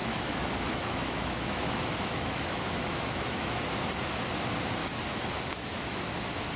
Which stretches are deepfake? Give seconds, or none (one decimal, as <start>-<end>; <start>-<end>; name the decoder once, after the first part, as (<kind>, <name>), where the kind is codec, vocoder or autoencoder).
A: 0.0-4.0 (autoencoder, DAC-VAE); 4.8-6.1